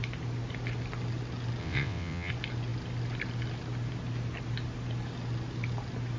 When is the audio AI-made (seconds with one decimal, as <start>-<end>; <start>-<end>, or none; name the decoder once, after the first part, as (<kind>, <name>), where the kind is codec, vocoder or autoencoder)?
1.6-2.3 (vocoder, WaveNeXt)